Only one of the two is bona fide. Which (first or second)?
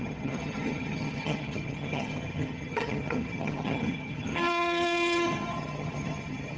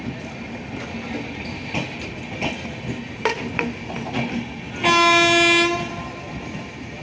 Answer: second